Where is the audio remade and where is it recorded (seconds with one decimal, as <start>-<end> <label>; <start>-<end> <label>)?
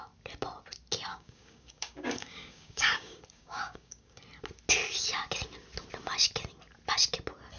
0.0-1.1 recorded; 1.1-4.2 remade; 4.2-7.6 recorded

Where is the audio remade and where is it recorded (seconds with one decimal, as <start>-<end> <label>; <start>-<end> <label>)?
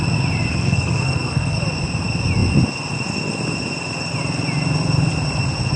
0.0-0.5 recorded; 0.5-1.6 remade; 1.6-5.8 recorded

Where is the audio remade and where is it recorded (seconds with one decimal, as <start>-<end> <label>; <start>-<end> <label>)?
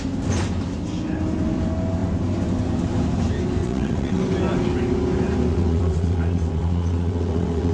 0.0-3.6 recorded; 3.6-4.2 remade; 4.2-5.5 recorded; 5.5-7.7 remade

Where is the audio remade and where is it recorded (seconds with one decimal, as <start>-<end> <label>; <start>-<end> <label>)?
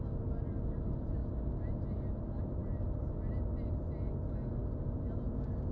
0.0-5.7 recorded